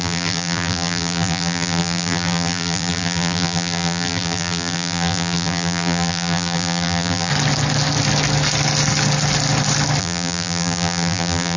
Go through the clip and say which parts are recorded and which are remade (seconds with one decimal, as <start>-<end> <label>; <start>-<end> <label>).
0.0-7.3 remade; 7.3-10.0 recorded; 10.0-11.6 remade